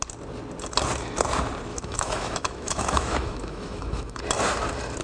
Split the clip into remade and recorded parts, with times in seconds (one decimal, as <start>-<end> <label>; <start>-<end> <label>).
0.0-1.7 recorded; 1.7-4.2 remade; 4.2-5.0 recorded